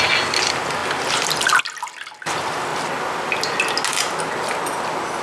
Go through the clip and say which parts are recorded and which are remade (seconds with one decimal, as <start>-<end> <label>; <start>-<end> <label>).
0.0-5.2 recorded